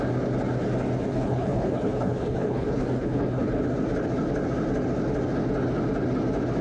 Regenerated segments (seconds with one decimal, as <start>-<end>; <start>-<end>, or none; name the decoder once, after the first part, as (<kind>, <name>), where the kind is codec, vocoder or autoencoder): 1.1-3.6 (codec, HILCodec)